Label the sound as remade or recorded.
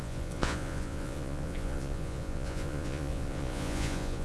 remade